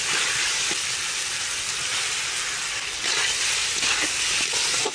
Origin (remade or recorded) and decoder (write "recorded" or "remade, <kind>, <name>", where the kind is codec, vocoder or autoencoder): recorded